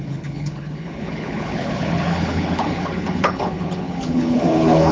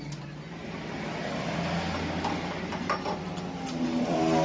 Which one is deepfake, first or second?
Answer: first